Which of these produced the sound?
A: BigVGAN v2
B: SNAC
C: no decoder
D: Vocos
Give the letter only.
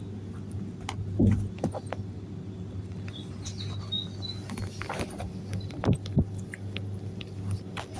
C